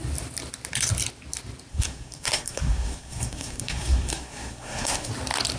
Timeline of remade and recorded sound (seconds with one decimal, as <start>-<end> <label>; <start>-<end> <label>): 0.0-1.7 recorded; 1.7-5.1 remade; 5.1-5.6 recorded